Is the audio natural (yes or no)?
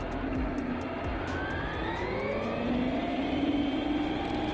yes